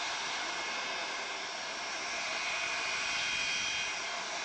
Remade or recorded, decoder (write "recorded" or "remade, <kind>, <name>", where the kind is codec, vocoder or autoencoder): recorded